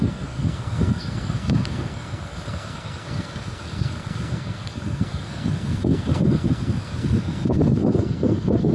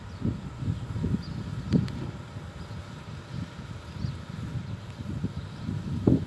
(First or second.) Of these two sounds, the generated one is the first